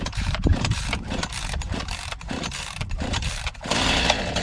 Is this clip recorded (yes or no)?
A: no